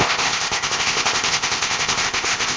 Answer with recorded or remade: remade